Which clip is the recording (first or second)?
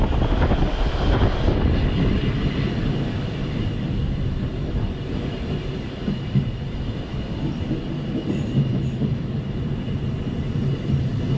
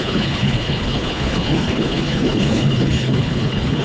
first